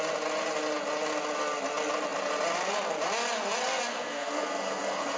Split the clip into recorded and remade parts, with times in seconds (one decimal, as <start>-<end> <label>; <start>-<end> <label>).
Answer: 0.0-3.9 recorded; 3.9-5.2 remade